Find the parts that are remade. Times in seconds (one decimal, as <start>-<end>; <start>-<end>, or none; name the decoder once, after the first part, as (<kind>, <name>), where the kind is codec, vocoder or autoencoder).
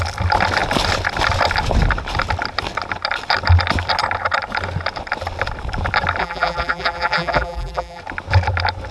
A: 6.2-8.0 (vocoder, BigVGAN v2)